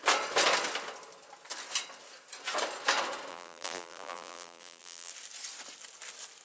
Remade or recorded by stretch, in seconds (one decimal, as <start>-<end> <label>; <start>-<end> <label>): 0.0-3.3 recorded; 3.3-5.1 remade; 5.1-6.4 recorded